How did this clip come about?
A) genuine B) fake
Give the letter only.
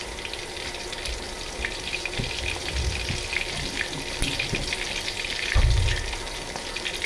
A